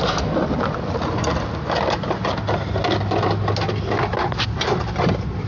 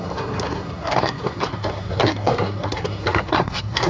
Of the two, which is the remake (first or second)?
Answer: second